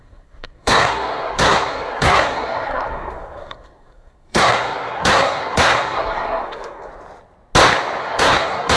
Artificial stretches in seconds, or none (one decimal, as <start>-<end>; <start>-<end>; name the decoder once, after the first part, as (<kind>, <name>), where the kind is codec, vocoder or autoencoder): 0.0-6.9 (codec, SNAC); 8.0-8.8